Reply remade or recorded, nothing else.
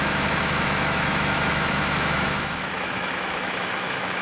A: remade